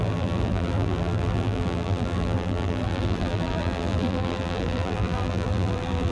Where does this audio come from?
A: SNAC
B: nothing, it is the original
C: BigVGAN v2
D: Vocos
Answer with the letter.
C